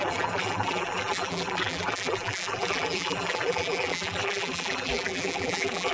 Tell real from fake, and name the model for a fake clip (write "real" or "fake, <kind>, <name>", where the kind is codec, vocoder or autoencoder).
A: fake, vocoder, BigVGAN v2